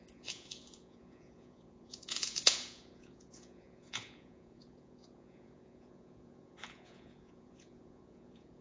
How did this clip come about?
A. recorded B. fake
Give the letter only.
B